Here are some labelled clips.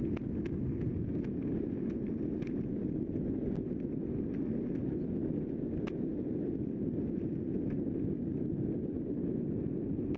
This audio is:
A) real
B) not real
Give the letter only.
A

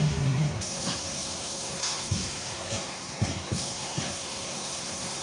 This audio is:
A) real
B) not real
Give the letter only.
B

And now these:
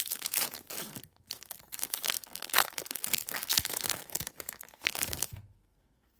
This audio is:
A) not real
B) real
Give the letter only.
A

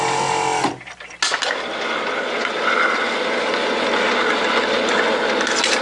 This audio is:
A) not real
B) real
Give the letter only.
B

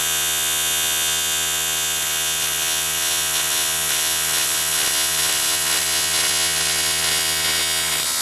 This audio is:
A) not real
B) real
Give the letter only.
B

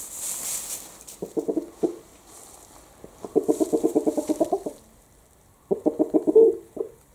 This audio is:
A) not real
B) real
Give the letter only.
B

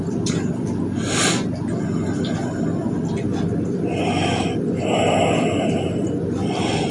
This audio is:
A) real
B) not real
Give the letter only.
A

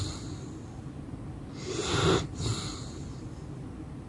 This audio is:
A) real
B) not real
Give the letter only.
A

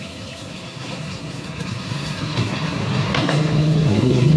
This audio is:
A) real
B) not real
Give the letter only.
B